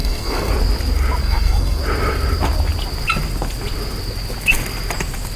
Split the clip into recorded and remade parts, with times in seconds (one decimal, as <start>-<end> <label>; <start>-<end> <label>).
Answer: 0.0-0.5 remade; 0.5-1.2 recorded; 1.2-1.8 remade; 1.8-5.4 recorded